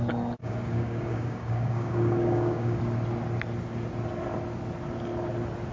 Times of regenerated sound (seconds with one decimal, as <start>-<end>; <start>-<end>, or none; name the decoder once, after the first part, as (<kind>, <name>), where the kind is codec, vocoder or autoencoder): 0.4-2.8 (codec, DAC)